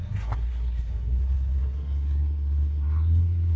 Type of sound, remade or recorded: remade